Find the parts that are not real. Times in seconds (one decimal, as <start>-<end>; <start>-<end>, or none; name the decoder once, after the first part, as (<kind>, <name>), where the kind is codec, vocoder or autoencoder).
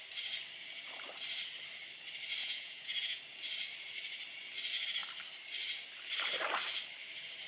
2.4-3.2 (vocoder, Vocos)